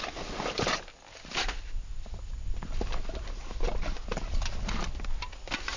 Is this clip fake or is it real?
real